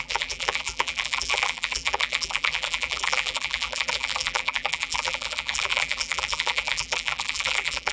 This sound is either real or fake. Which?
fake